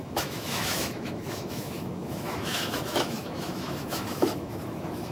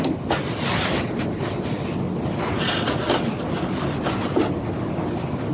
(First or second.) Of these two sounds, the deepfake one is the first